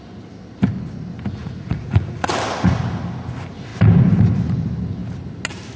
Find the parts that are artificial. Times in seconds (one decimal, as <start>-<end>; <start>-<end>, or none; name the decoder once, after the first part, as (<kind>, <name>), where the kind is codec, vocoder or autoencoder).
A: 1.4-2.3 (vocoder, Vocos)